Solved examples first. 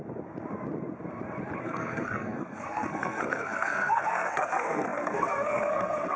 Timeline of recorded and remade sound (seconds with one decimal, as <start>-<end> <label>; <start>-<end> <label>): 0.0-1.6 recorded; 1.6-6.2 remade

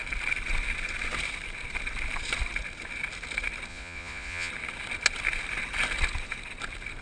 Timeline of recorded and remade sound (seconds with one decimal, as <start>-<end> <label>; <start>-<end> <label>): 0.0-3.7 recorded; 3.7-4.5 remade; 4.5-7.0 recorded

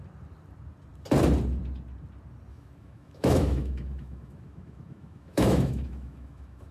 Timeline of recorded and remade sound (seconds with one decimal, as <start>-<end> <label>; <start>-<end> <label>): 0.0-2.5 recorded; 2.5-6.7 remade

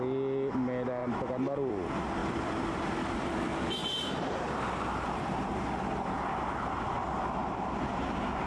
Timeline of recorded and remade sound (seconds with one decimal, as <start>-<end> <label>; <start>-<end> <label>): 0.0-1.0 recorded; 1.0-1.7 remade; 1.7-2.2 recorded; 2.2-3.4 remade; 3.4-3.8 recorded; 3.8-5.5 remade; 5.5-7.4 recorded; 7.4-7.9 remade; 7.9-8.5 recorded

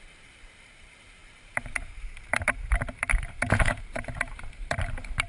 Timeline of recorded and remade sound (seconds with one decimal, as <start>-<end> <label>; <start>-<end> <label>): 0.0-5.3 remade